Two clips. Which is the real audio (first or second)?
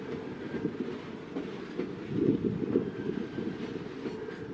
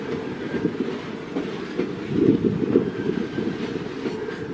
first